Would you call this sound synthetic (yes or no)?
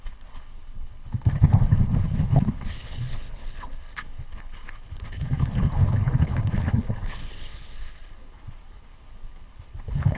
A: yes